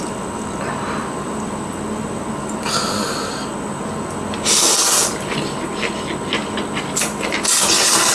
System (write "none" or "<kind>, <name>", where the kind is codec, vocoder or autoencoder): none